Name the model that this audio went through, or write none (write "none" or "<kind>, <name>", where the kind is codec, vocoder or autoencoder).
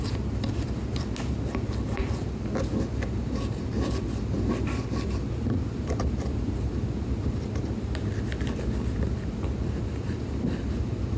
none